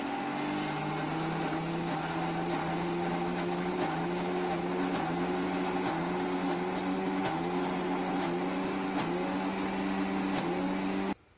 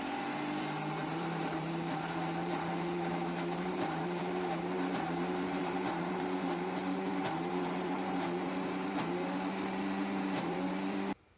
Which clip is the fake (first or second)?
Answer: second